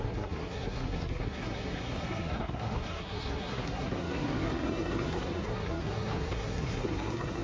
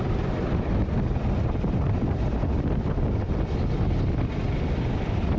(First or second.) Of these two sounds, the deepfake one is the first